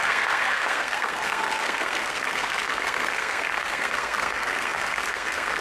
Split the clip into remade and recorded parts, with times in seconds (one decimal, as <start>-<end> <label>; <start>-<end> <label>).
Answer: 0.0-5.6 remade